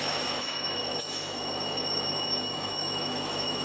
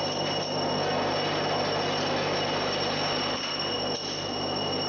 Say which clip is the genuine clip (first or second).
second